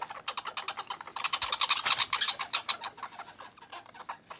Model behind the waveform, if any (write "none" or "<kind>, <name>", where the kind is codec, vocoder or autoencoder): none